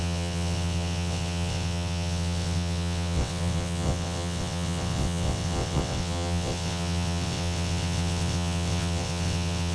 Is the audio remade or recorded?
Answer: remade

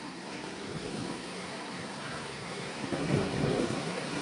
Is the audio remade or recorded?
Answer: remade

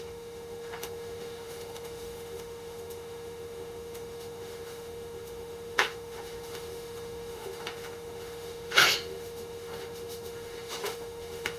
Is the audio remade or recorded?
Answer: remade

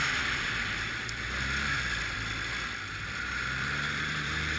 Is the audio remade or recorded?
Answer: remade